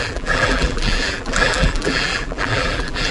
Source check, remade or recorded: remade